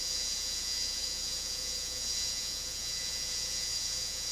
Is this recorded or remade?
remade